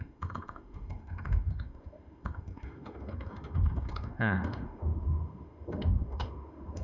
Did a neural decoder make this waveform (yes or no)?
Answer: yes